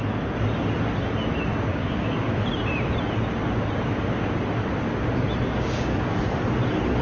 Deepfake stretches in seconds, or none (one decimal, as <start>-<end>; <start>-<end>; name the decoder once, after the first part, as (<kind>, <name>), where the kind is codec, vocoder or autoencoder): 1.7-2.4 (codec, DAC); 5.5-6.2